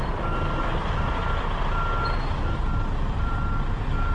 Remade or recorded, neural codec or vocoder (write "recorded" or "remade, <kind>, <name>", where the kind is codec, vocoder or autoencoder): remade, vocoder, BigVGAN v2